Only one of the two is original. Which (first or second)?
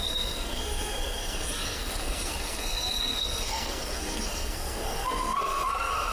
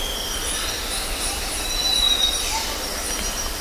second